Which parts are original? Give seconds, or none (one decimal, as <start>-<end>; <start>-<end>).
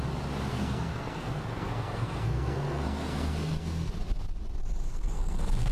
0.0-0.5; 3.9-4.8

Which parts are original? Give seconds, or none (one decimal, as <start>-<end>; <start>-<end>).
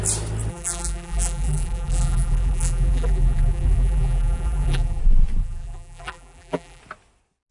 0.0-0.5; 5.0-5.4; 6.8-7.5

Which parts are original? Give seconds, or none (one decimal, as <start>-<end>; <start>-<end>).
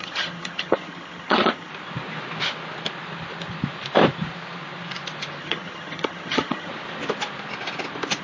1.7-5.4; 6.7-8.2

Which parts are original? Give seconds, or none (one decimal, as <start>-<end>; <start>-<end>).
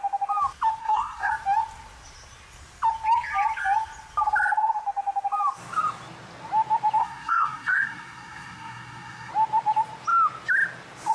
0.0-0.8; 1.3-7.0; 9.3-11.1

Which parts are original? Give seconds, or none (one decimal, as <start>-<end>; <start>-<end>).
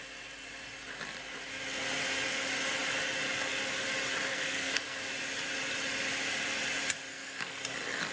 0.0-4.3; 5.0-7.1; 7.6-8.1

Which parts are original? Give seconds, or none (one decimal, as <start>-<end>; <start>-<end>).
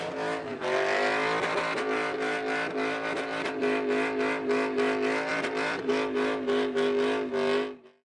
0.0-5.3; 5.9-8.2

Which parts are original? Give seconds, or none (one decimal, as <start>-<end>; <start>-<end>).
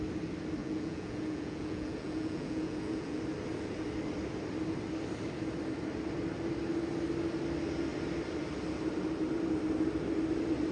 0.0-0.6; 3.2-10.7